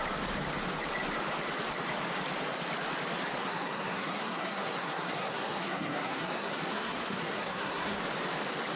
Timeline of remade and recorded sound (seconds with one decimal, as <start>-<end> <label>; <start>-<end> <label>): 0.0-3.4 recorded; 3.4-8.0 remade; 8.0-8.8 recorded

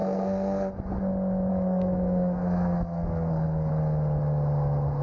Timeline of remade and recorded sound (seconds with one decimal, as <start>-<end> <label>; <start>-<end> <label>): 0.0-0.7 remade; 0.7-1.5 recorded; 1.5-3.7 remade; 3.7-5.0 recorded

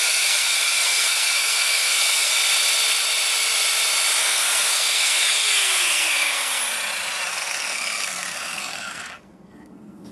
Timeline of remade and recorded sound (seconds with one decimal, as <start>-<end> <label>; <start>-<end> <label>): 0.0-2.3 remade; 2.3-4.2 recorded; 4.2-6.6 remade; 6.6-7.3 recorded; 7.3-10.1 remade

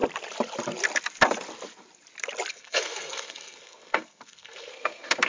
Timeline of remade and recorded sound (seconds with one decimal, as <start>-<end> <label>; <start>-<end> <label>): 0.0-2.5 recorded; 2.5-5.3 remade

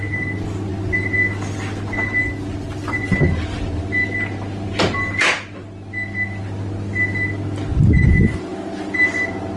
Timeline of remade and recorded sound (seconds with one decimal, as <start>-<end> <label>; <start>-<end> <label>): 0.0-9.6 recorded

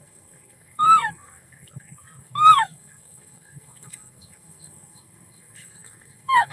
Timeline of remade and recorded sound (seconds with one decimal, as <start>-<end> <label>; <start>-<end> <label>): 0.0-6.5 remade

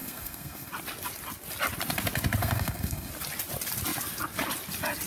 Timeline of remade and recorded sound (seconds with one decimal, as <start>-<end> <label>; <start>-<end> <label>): 0.0-0.7 remade; 0.7-2.4 recorded; 2.4-3.1 remade; 3.1-5.1 recorded